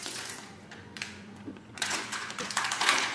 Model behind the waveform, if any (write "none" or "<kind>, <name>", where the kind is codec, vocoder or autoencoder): vocoder, Vocos